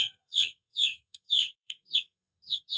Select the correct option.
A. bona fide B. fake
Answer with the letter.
B